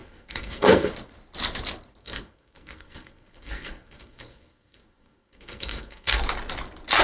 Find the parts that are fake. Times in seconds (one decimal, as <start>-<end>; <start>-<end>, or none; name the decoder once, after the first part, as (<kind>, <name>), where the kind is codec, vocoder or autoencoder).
0.0-0.9 (codec, SNAC); 2.0-6.2